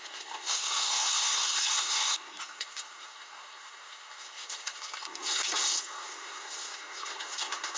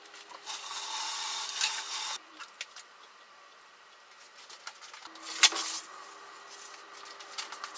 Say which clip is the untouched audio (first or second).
second